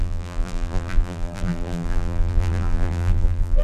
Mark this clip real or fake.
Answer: fake